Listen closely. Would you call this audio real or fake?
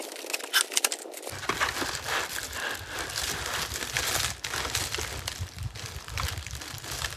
real